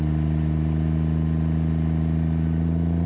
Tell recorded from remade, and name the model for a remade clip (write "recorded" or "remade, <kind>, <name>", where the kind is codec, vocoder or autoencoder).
recorded